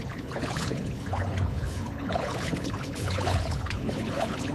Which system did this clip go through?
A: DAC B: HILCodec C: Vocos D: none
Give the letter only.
B